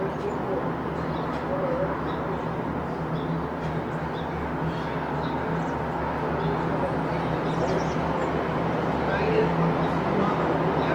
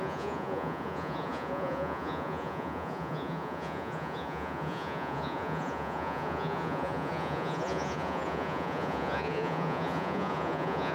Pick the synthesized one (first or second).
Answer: second